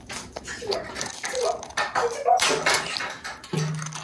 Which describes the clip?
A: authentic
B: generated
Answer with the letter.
A